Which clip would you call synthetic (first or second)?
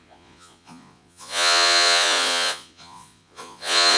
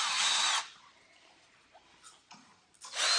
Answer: first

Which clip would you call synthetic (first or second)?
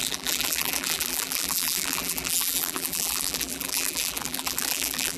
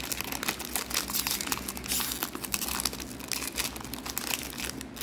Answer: first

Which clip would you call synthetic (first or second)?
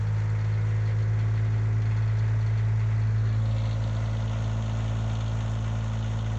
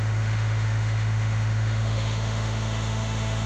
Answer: second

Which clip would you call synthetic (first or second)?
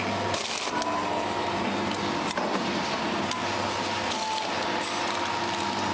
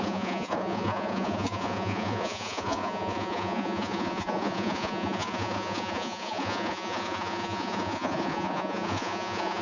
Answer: second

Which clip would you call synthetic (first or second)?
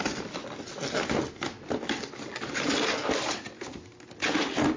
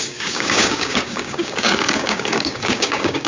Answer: second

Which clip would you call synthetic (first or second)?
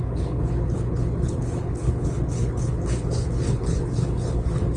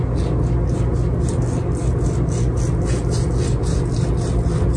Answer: first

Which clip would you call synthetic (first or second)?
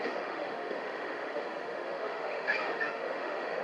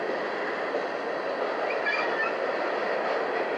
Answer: first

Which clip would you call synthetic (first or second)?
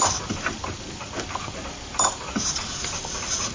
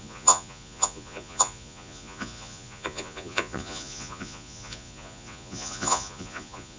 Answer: second